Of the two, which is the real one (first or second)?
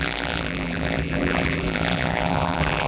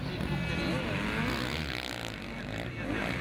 second